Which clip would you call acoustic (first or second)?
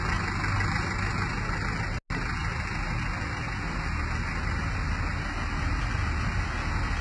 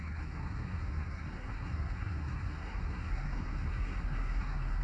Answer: first